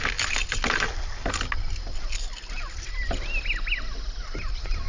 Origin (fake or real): real